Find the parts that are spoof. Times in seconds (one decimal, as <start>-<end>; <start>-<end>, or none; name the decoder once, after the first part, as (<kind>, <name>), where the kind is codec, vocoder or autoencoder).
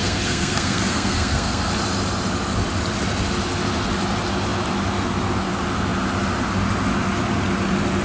0.0-1.7 (codec, SNAC)